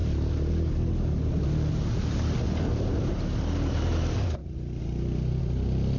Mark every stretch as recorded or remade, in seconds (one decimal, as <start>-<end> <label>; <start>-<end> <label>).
0.0-6.0 recorded